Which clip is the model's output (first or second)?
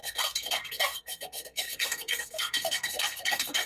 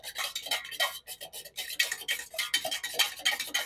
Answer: first